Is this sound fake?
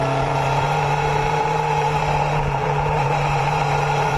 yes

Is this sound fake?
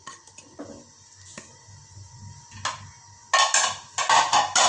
no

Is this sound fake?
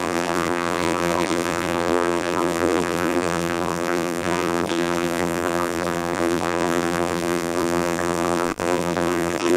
yes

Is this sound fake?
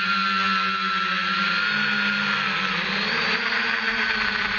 no